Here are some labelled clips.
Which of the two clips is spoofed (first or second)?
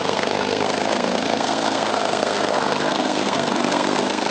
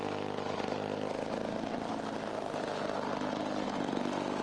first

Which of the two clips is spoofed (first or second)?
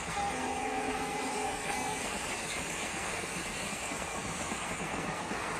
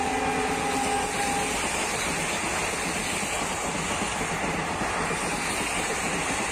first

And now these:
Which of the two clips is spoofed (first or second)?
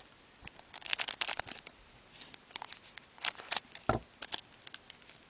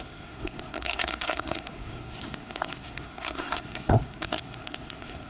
second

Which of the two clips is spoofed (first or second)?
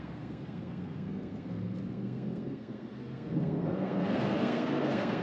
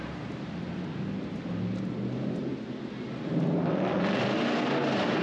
first